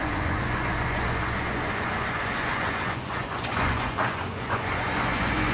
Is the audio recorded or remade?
remade